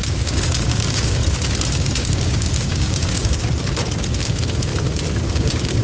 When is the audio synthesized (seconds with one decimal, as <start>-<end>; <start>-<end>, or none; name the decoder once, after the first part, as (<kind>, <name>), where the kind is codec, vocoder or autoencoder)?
0.0-1.2 (codec, DAC); 1.7-3.4; 4.2-4.7; 5.3-5.8